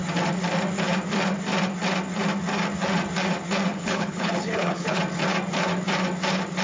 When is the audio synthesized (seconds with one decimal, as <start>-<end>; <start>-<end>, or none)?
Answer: 3.7-5.0